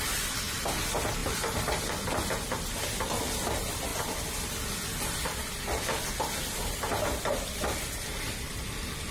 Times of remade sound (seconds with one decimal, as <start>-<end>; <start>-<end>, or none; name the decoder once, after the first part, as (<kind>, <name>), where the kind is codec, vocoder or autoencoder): none